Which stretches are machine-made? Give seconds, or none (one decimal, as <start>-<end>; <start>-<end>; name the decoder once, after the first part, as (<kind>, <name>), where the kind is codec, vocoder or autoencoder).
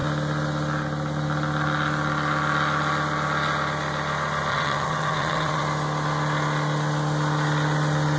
4.5-5.6 (vocoder, WaveNeXt)